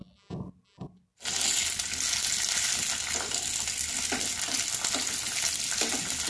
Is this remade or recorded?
recorded